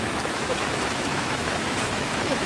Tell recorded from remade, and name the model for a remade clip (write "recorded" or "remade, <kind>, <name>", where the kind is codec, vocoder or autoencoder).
remade, autoencoder, DAC-VAE